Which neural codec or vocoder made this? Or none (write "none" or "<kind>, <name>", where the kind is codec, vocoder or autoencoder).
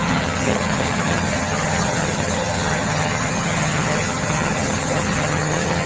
vocoder, HiFi-GAN